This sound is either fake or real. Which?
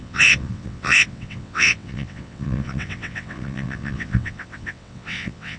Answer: fake